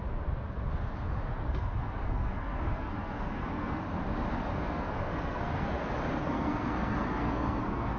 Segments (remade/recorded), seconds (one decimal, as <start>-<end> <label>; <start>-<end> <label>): 0.0-1.4 recorded; 1.4-3.8 remade; 3.8-4.5 recorded; 4.5-5.8 remade; 5.8-6.2 recorded; 6.2-8.0 remade